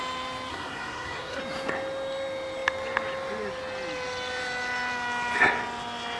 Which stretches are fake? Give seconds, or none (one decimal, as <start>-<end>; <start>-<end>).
0.5-1.4